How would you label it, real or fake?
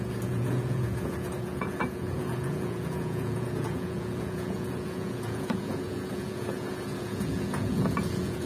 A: fake